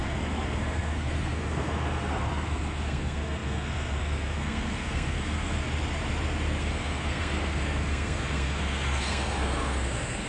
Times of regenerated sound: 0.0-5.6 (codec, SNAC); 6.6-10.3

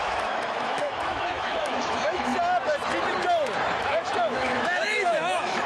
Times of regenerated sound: 0.0-2.3 (autoencoder, DAC-VAE); 3.8-5.7

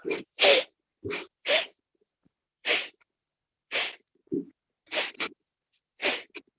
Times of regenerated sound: 0.0-4.2 (vocoder, BigVGAN v2); 5.1-6.0

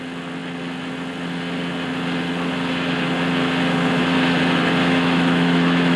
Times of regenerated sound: 4.8-6.0 (autoencoder, DAC-VAE)

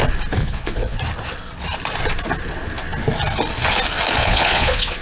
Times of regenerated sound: 0.4-1.0 (vocoder, Vocos); 4.2-5.0

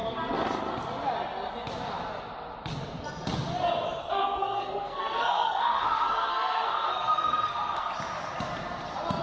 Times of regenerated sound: 4.0-7.9 (codec, SNAC)